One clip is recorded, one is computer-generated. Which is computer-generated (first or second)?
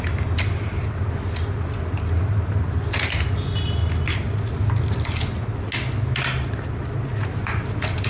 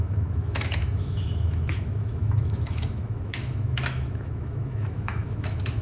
second